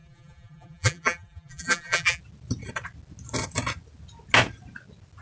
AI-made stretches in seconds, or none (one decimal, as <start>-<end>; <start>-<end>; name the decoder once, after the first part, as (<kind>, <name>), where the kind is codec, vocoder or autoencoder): 0.0-2.2 (vocoder, BigVGAN v2)